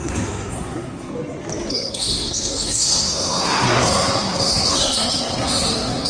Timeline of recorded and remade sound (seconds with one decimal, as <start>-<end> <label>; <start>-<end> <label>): 0.0-1.1 remade; 1.1-1.7 recorded; 1.7-6.1 remade